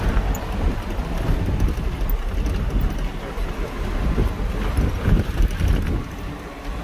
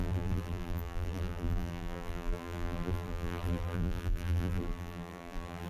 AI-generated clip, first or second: second